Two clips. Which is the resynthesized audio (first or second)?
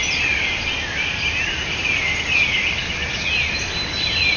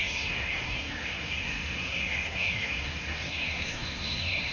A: second